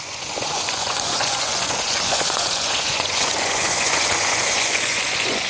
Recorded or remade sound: remade